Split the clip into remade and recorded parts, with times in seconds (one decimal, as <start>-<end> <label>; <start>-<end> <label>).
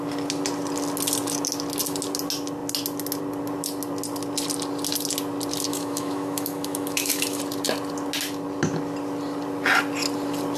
0.0-5.7 recorded; 5.7-7.4 remade; 7.4-10.6 recorded